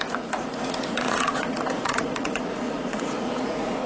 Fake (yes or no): yes